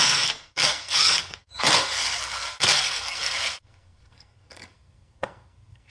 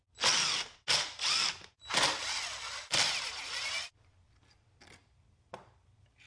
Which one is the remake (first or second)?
first